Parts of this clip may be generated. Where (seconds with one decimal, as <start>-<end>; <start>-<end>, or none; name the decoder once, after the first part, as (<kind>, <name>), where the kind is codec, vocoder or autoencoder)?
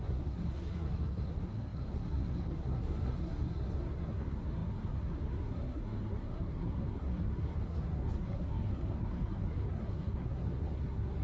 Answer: 0.0-11.2 (codec, SNAC)